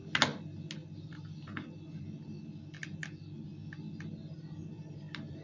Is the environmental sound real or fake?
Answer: real